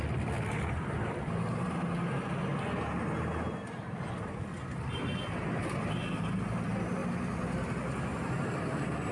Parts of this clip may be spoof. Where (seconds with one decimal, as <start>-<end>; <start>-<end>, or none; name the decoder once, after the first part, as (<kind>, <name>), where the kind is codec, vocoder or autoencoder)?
none